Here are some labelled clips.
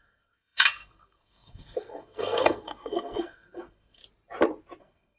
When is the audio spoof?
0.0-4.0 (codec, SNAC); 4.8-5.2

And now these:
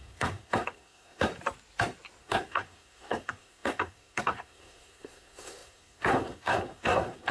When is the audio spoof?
0.0-1.3 (codec, SNAC); 2.2-7.3

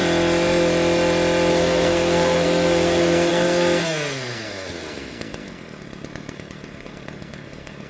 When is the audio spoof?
1.5-7.9 (codec, SNAC)

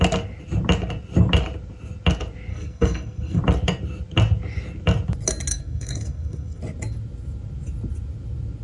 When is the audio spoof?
2.5-3.4 (codec, SNAC); 5.5-6.6